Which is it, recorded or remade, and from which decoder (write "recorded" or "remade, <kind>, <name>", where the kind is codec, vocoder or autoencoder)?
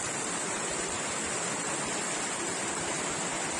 remade, vocoder, BigVGAN v2